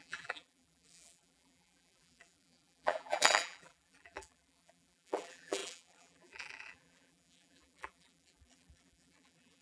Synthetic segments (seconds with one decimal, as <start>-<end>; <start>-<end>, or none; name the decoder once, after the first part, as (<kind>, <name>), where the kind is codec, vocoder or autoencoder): 0.0-9.6 (vocoder, BigVGAN v2)